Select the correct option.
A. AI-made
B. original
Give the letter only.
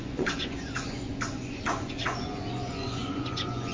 A